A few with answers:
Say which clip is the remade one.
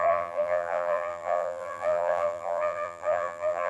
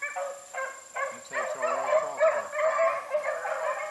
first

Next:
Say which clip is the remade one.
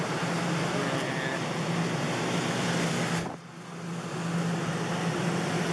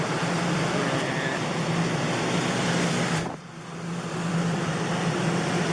second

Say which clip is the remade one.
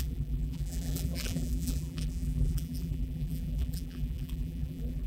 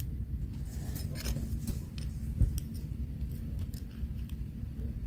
first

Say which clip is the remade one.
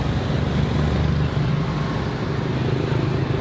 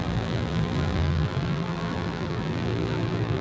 second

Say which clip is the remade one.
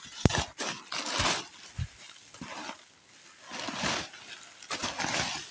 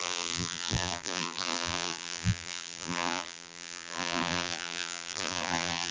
second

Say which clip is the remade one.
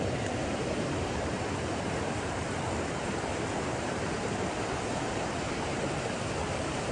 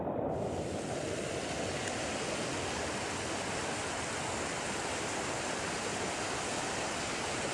first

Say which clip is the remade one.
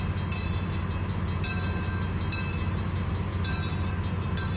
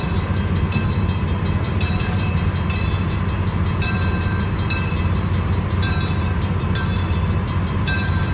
second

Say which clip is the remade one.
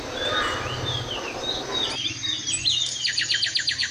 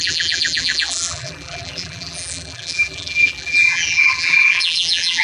second